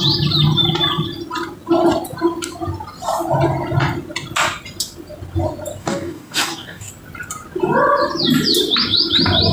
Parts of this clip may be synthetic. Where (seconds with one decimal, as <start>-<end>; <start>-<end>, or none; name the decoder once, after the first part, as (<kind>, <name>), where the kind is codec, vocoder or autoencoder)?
5.8-6.9 (codec, DAC)